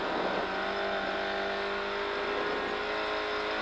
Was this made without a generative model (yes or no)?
yes